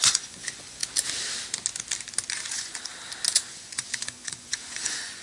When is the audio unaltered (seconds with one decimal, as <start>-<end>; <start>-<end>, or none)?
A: 0.8-2.5; 2.9-3.5